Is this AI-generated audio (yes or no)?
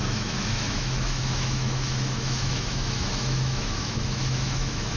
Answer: yes